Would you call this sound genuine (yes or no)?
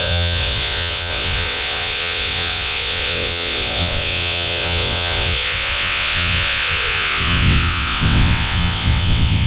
no